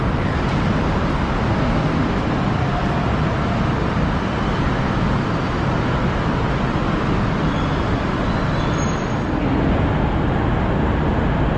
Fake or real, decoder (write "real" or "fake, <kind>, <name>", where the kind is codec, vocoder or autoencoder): real